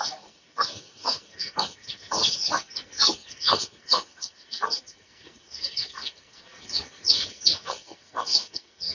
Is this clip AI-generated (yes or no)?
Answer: yes